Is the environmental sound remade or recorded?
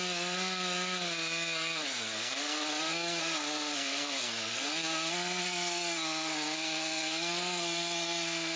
remade